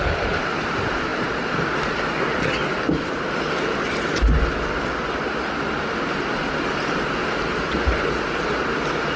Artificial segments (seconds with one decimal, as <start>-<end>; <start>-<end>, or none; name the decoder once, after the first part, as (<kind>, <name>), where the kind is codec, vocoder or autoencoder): none